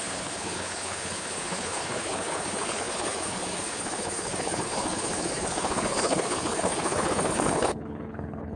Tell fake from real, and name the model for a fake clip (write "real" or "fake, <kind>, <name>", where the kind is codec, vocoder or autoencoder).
fake, codec, HILCodec